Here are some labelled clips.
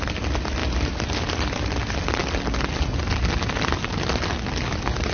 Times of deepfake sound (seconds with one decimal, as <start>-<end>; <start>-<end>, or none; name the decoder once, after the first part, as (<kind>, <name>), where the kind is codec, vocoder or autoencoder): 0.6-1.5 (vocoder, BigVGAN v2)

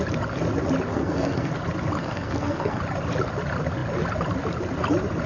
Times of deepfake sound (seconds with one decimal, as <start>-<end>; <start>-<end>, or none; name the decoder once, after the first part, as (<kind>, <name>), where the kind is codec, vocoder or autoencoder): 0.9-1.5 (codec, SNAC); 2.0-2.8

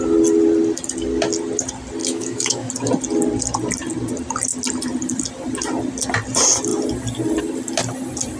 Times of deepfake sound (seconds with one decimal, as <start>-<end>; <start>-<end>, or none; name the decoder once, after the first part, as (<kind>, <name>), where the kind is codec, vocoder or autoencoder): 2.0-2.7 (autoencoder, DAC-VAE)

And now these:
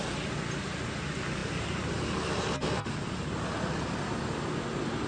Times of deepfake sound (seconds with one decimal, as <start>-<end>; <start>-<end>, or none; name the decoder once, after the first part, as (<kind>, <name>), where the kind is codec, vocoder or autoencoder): none

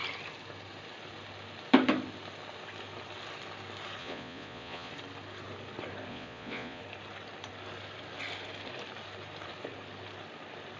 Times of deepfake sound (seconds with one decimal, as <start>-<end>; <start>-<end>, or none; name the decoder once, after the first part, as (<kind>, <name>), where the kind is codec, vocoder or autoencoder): 4.0-4.9 (vocoder, Vocos); 6.1-6.8